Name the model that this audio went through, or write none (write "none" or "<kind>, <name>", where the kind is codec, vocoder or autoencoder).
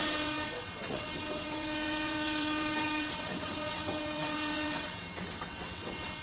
vocoder, WaveNeXt